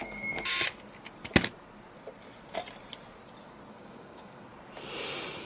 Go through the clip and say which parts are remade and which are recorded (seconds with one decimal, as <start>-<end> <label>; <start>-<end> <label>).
0.0-0.5 remade; 0.5-3.7 recorded; 3.7-4.5 remade; 4.5-5.4 recorded

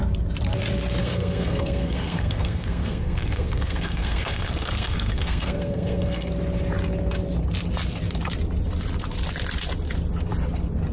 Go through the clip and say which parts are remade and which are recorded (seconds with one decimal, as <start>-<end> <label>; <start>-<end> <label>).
0.0-1.0 recorded; 1.0-6.3 remade; 6.3-10.9 recorded